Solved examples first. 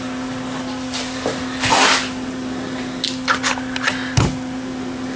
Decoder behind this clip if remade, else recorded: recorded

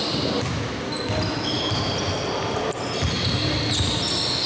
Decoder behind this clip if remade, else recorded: recorded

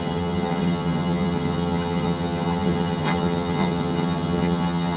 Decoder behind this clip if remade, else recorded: remade, vocoder, HiFi-GAN